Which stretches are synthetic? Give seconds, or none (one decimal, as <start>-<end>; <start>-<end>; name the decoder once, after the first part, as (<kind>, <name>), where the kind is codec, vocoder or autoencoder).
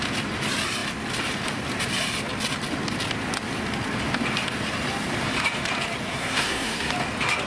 6.1-6.9 (codec, SNAC)